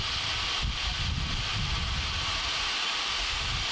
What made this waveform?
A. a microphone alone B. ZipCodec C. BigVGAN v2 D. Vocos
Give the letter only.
C